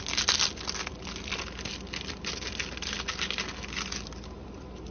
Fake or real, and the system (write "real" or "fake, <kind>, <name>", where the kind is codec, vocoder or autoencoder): real